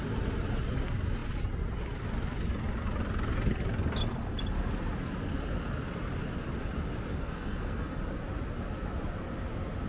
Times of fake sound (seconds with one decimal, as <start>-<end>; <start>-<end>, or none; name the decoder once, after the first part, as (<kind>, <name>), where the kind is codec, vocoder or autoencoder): 7.1-8.0 (codec, SNAC)